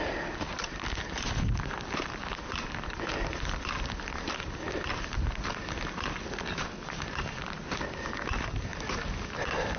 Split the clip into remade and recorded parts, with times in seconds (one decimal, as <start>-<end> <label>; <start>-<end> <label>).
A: 0.0-9.8 recorded